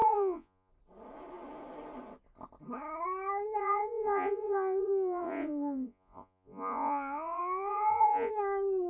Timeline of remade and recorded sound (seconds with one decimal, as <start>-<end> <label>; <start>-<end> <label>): 0.0-0.7 remade; 0.7-3.6 recorded; 3.6-8.3 remade; 8.3-8.9 recorded